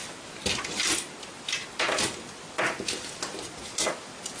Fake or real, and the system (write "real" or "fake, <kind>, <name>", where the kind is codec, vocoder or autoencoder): fake, vocoder, BigVGAN v2